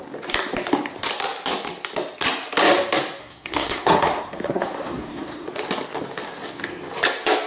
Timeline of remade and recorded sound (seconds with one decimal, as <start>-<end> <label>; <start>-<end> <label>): 0.0-3.2 recorded; 3.2-5.5 remade; 5.5-7.5 recorded